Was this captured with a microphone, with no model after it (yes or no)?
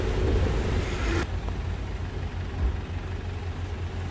yes